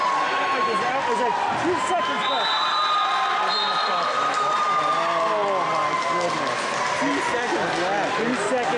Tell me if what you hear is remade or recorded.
recorded